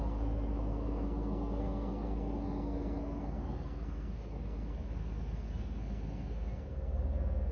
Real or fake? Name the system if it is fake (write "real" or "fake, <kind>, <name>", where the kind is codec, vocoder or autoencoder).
fake, codec, SNAC